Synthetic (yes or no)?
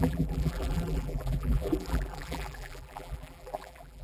yes